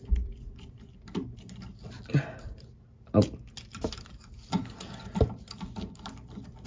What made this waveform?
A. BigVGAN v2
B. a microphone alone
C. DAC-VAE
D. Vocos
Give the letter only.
B